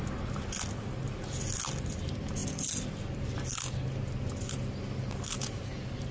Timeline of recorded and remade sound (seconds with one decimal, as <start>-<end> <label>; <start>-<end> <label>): 0.0-6.1 recorded